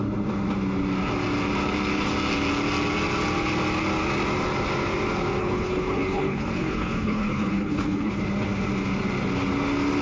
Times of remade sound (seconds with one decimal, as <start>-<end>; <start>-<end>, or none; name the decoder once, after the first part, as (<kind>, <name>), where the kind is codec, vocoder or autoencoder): 5.4-8.2 (codec, HILCodec)